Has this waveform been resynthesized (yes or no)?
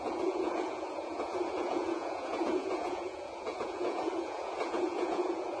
yes